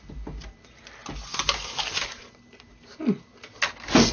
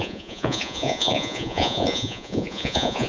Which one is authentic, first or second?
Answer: first